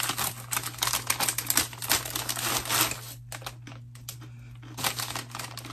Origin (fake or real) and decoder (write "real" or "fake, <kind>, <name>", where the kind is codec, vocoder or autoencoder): real